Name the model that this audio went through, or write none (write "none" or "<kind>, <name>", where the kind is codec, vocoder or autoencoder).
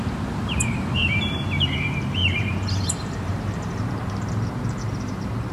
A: vocoder, BigVGAN v2